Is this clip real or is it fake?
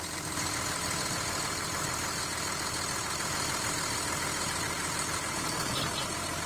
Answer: real